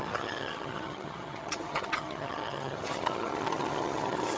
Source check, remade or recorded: remade